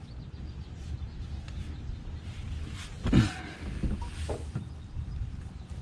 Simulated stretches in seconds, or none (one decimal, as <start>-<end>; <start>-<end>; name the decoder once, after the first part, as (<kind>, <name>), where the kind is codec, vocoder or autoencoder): none